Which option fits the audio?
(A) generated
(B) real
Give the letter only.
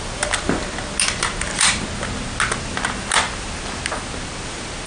B